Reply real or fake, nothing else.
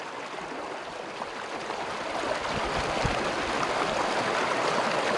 real